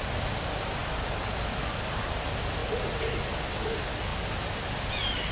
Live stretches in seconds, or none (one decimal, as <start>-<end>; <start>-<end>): 0.0-5.3